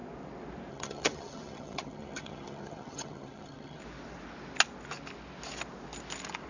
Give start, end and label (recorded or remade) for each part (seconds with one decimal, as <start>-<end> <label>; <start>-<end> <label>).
0.0-0.7 recorded; 0.7-3.8 remade; 3.8-6.5 recorded